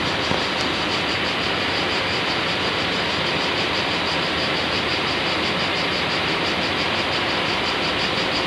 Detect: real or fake fake